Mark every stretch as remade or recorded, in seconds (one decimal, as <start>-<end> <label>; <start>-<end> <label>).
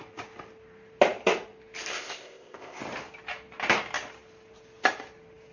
0.0-1.9 recorded; 1.9-2.8 remade; 2.8-5.5 recorded